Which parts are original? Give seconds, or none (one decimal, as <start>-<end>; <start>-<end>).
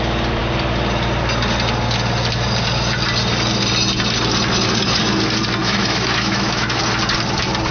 0.0-5.6; 6.8-7.7